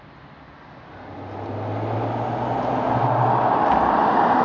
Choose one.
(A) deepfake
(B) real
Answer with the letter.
B